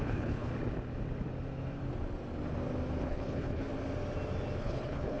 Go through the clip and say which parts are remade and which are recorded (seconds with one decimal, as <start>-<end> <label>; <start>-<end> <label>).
0.0-0.5 remade; 0.5-3.0 recorded; 3.0-3.7 remade; 3.7-4.6 recorded; 4.6-5.2 remade